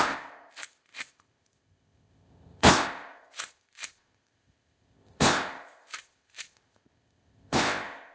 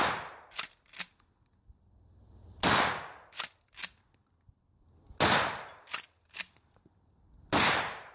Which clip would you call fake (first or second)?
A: first